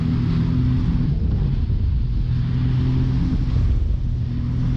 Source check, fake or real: real